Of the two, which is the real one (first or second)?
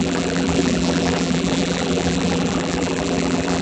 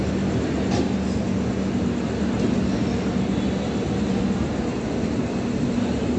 second